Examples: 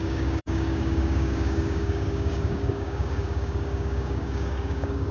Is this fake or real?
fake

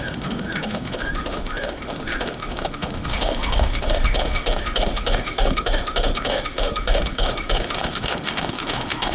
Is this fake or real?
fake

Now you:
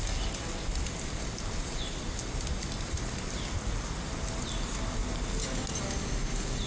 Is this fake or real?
real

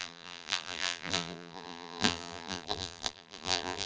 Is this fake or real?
fake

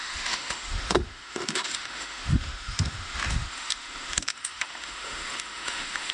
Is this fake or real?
fake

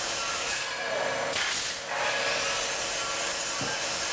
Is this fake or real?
real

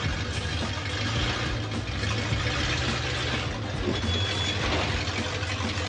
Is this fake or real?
real